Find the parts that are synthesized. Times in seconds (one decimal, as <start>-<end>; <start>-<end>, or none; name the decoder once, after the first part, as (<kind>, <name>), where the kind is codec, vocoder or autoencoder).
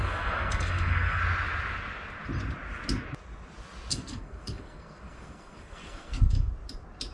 0.0-1.2 (codec, SNAC); 3.9-6.5